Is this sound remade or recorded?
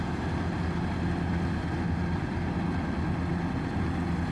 recorded